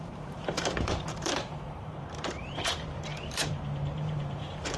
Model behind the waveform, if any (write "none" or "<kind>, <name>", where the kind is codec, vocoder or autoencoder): vocoder, BigVGAN v2